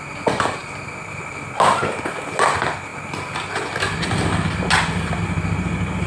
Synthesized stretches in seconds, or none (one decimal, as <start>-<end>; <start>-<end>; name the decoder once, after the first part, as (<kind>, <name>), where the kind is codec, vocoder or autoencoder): none